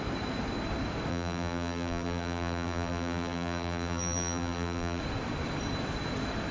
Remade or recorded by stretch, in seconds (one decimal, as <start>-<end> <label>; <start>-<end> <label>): 0.0-1.1 recorded; 1.1-5.0 remade; 5.0-6.5 recorded